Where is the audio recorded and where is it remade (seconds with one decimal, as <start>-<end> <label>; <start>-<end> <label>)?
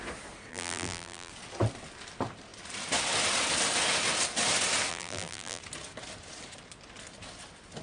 0.0-0.5 recorded; 0.5-1.3 remade; 1.3-4.9 recorded; 4.9-5.6 remade; 5.6-7.8 recorded